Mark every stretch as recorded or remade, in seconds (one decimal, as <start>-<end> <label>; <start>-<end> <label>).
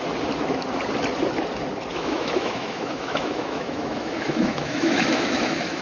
0.0-1.9 recorded; 1.9-5.8 remade